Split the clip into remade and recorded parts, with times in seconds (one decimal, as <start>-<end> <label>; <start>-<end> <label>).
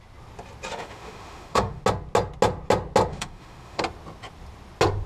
0.0-0.7 recorded; 0.7-1.8 remade; 1.8-3.1 recorded; 3.1-3.8 remade; 3.8-5.1 recorded